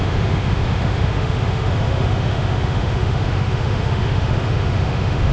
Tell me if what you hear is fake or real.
fake